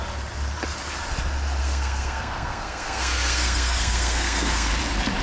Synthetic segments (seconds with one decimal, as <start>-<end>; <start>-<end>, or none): 1.6-4.7